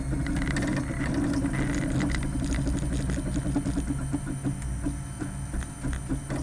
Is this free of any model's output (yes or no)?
yes